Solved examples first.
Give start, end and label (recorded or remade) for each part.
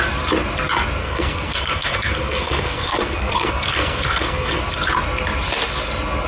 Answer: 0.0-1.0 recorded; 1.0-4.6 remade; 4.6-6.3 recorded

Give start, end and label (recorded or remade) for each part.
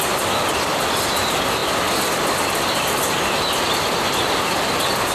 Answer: 0.0-5.1 recorded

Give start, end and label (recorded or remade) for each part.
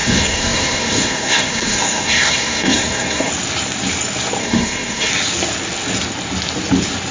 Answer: 0.0-3.3 remade; 3.3-4.4 recorded; 4.4-5.1 remade; 5.1-7.1 recorded